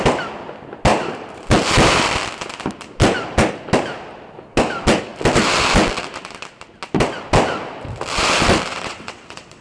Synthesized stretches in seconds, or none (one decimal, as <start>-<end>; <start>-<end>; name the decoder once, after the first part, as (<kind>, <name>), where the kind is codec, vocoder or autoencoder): 8.7-9.6 (vocoder, WaveNeXt)